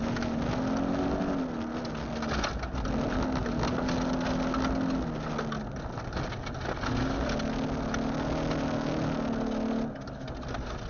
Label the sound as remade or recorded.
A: recorded